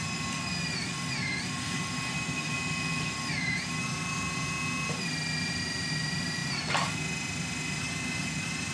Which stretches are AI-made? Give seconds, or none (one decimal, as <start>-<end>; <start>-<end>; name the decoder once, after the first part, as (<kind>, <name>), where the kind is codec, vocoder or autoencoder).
none